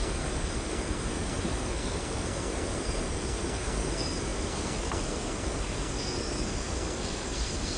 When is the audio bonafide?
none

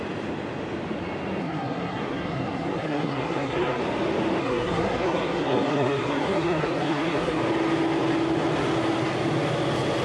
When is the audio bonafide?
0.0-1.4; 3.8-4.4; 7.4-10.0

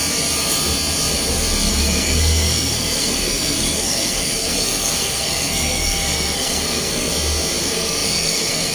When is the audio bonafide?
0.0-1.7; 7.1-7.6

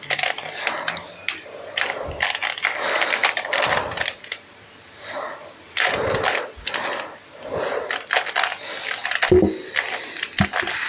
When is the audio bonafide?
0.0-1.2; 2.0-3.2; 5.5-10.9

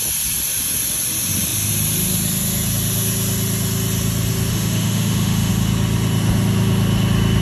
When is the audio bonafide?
0.0-4.5; 5.5-7.4

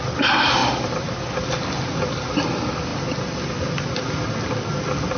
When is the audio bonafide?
0.0-5.2

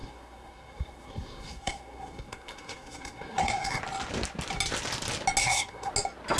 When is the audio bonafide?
3.8-5.4; 5.9-6.4